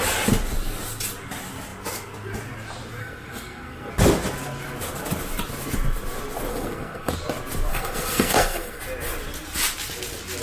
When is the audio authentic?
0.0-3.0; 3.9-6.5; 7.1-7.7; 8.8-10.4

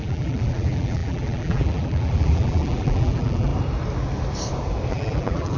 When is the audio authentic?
3.5-4.9

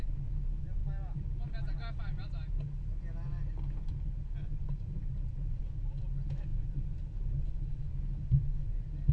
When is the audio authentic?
0.0-4.5; 5.6-9.1

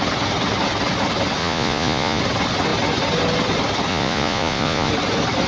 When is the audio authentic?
0.0-1.4; 2.2-3.9; 4.9-5.5

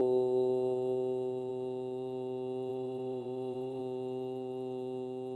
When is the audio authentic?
0.0-2.7; 3.8-5.4

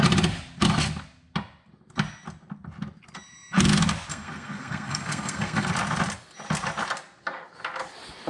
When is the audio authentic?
0.0-4.1; 5.7-8.3